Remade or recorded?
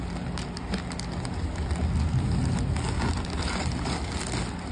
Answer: recorded